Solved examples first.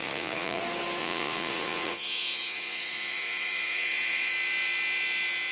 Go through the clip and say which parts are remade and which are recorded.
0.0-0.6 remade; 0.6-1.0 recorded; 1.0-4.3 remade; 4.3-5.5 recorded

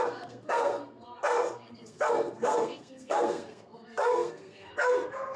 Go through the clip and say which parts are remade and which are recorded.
0.0-5.4 remade

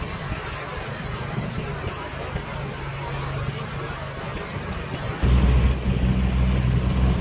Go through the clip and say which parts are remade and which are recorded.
0.0-0.7 recorded; 0.7-2.2 remade; 2.2-7.2 recorded

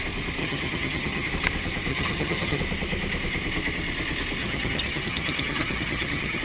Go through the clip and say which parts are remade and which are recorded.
0.0-0.4 recorded; 0.4-1.3 remade; 1.3-1.9 recorded; 1.9-2.6 remade; 2.6-4.4 recorded; 4.4-6.4 remade